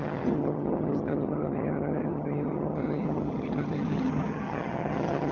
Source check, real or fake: fake